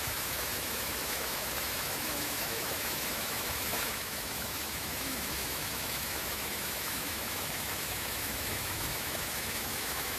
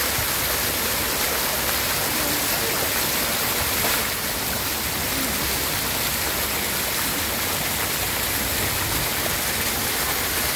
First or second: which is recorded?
second